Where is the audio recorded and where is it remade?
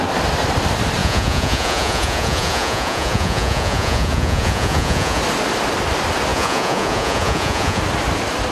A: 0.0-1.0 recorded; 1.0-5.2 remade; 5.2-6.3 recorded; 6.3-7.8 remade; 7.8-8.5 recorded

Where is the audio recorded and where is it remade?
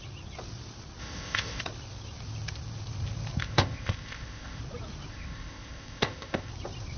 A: 0.0-1.0 recorded; 1.0-1.6 remade; 1.6-3.4 recorded; 3.4-4.6 remade; 4.6-5.1 recorded; 5.1-6.5 remade; 6.5-7.0 recorded